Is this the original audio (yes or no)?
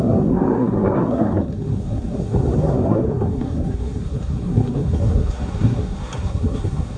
no